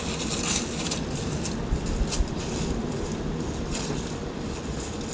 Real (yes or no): yes